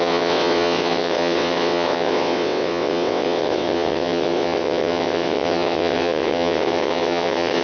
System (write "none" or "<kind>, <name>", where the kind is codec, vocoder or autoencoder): vocoder, WaveNeXt